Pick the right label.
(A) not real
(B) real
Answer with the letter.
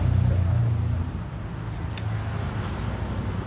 B